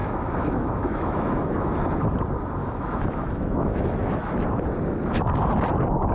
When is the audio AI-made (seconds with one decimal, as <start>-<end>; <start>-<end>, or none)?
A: 0.0-1.7; 2.6-4.3